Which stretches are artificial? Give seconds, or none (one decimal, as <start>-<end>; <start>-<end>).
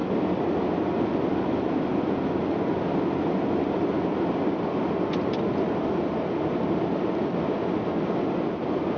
none